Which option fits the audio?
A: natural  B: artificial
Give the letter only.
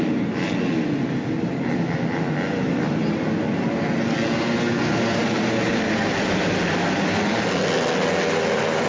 A